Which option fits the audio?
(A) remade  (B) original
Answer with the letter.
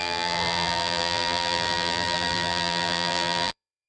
A